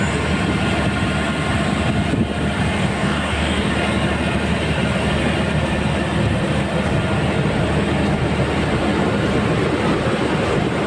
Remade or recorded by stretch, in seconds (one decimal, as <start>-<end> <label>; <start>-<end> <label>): 0.0-2.8 recorded; 2.8-3.7 remade; 3.7-10.9 recorded